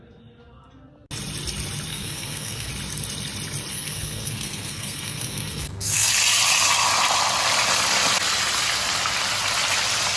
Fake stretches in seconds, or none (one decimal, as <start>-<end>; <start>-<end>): 1.9-2.7; 3.7-6.1